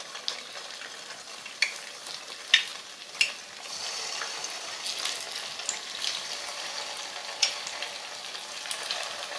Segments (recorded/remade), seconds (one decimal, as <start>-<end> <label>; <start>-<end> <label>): 0.0-2.7 recorded; 2.7-3.8 remade; 3.8-9.4 recorded